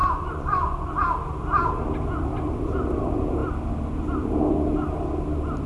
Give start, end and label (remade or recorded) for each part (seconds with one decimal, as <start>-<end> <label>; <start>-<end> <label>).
0.0-0.9 remade; 0.9-5.7 recorded